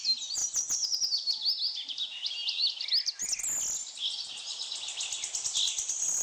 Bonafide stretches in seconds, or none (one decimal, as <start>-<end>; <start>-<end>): 0.0-6.2